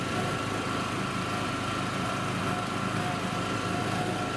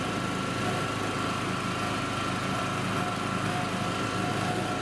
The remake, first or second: first